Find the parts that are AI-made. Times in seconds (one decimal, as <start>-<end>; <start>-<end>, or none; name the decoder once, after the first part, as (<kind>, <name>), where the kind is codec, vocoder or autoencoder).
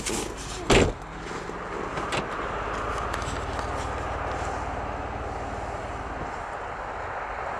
none